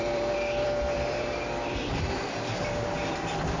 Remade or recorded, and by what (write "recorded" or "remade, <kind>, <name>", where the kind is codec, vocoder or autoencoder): remade, vocoder, BigVGAN v2